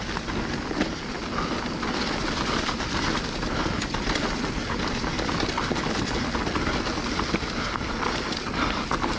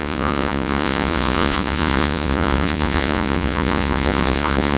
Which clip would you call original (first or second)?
first